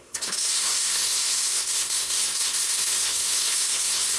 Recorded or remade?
remade